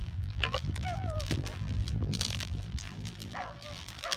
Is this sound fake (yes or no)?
yes